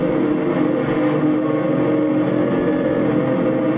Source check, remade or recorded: recorded